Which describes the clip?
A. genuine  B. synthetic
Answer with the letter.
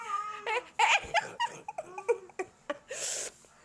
A